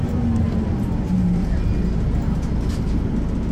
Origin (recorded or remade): recorded